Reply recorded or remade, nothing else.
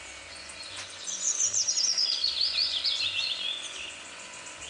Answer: remade